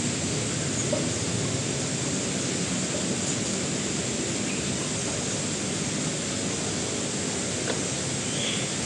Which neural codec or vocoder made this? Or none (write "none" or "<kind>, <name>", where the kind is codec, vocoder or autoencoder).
none